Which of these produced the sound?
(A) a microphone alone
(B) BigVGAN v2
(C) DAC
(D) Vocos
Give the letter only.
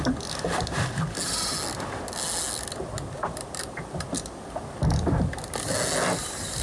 A